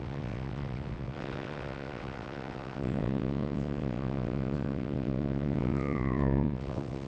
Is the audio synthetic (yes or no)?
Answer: yes